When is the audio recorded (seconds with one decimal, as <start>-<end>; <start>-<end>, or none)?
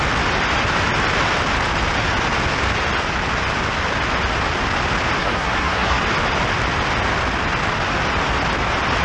0.0-5.2; 6.0-9.0